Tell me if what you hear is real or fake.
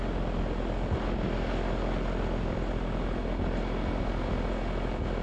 real